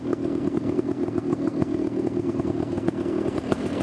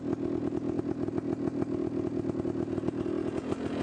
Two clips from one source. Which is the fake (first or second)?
first